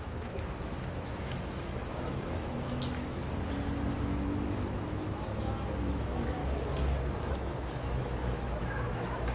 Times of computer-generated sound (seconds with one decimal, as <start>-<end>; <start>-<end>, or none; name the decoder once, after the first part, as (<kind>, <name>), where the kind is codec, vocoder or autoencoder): 0.0-3.2 (autoencoder, DAC-VAE); 4.0-6.4; 7.3-9.3